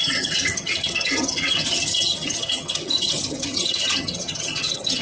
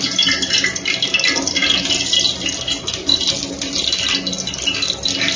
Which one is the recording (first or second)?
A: second